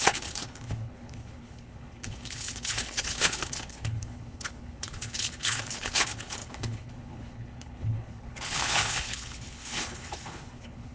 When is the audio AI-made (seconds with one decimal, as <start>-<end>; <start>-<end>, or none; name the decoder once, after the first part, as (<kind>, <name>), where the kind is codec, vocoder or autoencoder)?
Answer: 0.0-10.9 (codec, HILCodec)

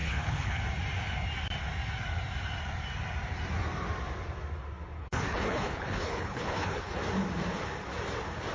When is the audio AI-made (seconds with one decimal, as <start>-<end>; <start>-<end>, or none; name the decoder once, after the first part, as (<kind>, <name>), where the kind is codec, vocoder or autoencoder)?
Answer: 0.0-0.6 (codec, HILCodec); 5.0-7.0

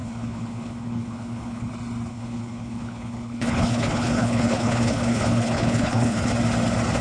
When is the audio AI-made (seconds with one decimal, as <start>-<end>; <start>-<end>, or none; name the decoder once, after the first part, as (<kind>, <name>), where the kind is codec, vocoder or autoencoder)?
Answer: 0.0-1.7 (codec, HILCodec); 2.1-6.3

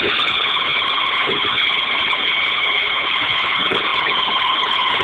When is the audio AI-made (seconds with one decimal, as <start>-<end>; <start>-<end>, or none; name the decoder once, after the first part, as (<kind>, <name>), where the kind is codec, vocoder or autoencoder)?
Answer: 0.0-5.0 (codec, HILCodec)

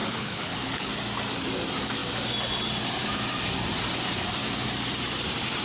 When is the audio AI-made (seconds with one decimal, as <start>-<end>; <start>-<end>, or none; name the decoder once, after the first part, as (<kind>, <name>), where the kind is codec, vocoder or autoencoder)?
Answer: 0.0-0.9 (codec, HILCodec)

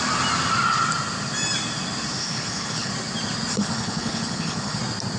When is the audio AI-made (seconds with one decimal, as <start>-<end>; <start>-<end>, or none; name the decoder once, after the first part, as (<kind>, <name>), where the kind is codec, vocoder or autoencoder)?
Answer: 2.2-2.9 (codec, HILCodec); 3.5-4.8

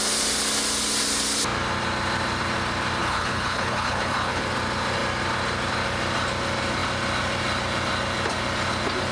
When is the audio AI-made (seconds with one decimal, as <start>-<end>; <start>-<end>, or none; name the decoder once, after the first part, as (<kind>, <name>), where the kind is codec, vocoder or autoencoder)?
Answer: 3.0-4.4 (codec, HILCodec)

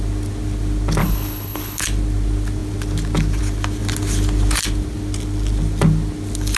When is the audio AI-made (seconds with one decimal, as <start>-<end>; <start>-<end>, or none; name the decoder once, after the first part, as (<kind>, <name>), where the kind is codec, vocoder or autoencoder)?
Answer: 1.0-1.8 (codec, HILCodec)